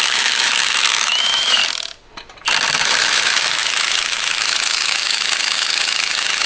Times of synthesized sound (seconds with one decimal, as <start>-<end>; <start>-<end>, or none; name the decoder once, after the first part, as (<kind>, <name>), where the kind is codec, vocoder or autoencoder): 0.0-1.6 (autoencoder, DAC-VAE); 2.7-6.5